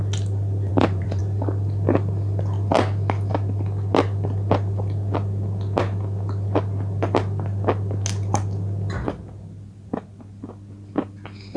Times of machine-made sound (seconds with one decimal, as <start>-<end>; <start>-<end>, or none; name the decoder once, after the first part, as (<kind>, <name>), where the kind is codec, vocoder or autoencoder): 0.7-1.2 (vocoder, BigVGAN v2)